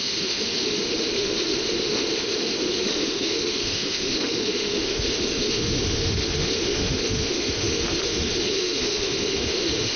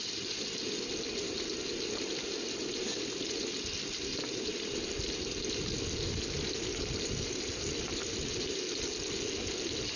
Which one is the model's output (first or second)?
first